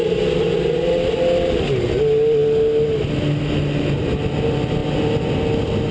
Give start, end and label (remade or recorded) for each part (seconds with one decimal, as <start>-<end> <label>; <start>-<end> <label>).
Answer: 0.0-5.9 recorded